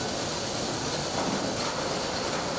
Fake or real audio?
real